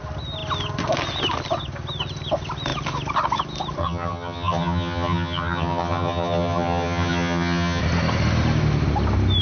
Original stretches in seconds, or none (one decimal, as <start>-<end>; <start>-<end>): 0.0-3.8; 7.8-9.4